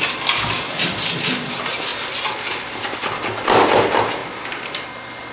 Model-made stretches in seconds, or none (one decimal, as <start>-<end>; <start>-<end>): none